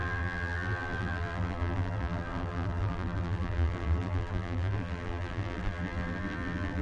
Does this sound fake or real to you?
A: fake